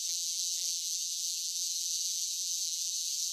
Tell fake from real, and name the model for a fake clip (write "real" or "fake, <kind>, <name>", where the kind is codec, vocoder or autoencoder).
fake, vocoder, BigVGAN v2